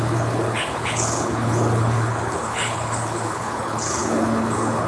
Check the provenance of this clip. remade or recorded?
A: remade